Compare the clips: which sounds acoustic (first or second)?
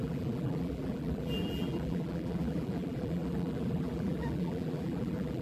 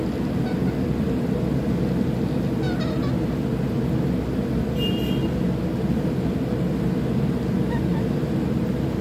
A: second